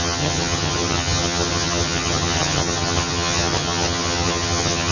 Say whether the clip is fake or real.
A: fake